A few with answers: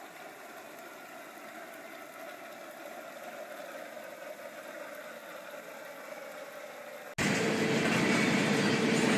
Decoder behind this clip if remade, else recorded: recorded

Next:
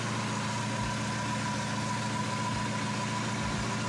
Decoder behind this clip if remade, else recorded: recorded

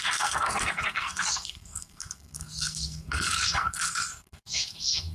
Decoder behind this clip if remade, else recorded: remade, codec, SNAC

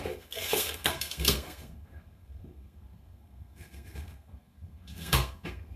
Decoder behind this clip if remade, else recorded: remade, codec, SNAC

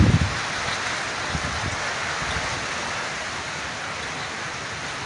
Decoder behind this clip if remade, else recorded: recorded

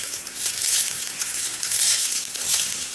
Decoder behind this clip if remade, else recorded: remade, codec, SNAC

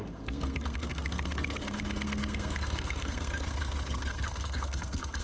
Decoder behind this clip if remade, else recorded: remade, codec, SNAC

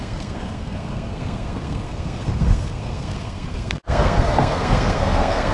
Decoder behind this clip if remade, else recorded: remade, codec, SNAC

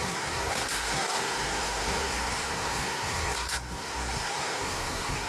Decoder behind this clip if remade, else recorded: remade, codec, SNAC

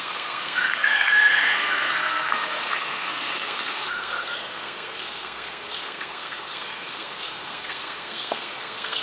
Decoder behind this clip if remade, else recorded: remade, codec, SNAC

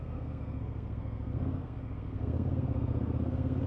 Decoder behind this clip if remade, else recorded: remade, codec, SNAC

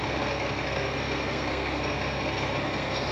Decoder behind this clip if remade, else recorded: remade, codec, SNAC